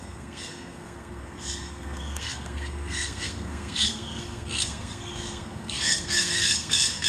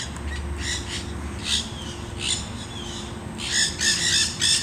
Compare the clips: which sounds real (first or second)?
second